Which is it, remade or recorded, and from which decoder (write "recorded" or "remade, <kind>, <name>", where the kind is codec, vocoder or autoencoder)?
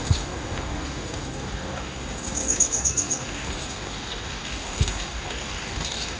remade, codec, DAC